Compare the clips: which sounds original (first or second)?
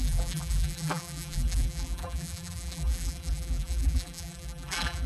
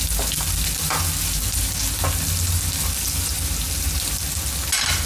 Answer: second